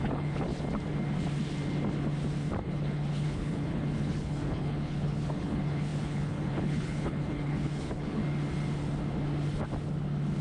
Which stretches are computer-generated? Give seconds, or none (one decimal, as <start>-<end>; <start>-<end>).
0.0-0.5; 2.6-8.2